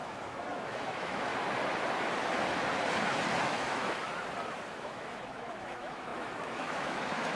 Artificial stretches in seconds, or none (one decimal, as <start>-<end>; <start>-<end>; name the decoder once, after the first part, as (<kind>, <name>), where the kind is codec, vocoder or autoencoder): 0.0-1.3 (autoencoder, DAC-VAE); 3.4-4.1; 4.7-7.4